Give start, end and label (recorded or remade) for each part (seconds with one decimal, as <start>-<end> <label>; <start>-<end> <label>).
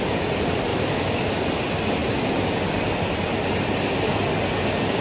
0.0-0.7 recorded; 0.7-1.4 remade; 1.4-5.0 recorded